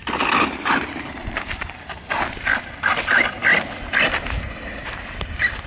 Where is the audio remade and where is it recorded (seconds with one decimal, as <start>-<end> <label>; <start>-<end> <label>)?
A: 0.0-5.7 recorded